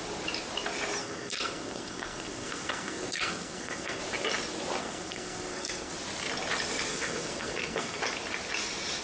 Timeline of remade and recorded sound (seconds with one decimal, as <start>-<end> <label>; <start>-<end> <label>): 0.0-1.0 recorded; 1.0-4.0 remade; 4.0-4.8 recorded; 4.8-5.9 remade; 5.9-6.9 recorded; 6.9-8.0 remade; 8.0-9.0 recorded